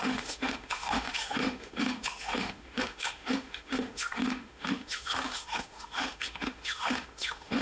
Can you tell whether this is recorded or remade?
remade